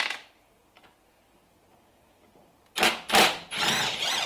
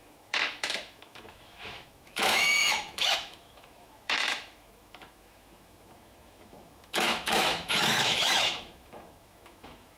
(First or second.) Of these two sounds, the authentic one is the first